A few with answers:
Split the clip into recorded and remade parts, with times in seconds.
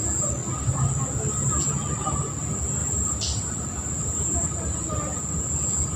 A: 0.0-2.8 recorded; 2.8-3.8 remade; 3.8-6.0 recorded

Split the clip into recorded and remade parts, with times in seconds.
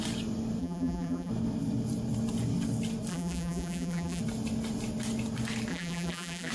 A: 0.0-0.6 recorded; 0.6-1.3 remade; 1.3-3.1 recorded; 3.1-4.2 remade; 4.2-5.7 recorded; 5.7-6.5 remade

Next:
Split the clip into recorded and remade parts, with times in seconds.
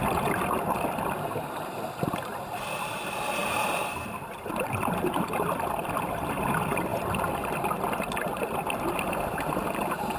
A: 0.0-10.2 remade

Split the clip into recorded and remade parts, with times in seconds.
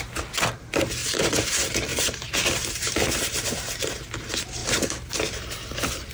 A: 0.0-1.0 recorded; 1.0-1.5 remade; 1.5-1.9 recorded; 1.9-4.1 remade; 4.1-6.1 recorded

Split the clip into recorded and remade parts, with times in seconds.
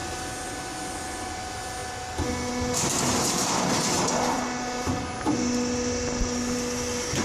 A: 0.0-7.2 recorded